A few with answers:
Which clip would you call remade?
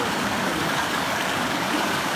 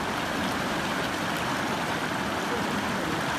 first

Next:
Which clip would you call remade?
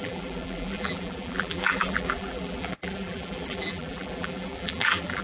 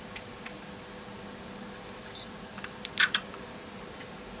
first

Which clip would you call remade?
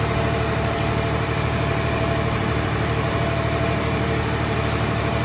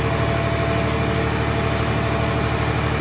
first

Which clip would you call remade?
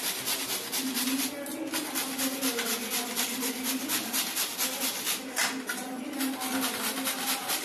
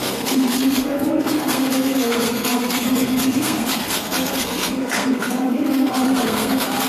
second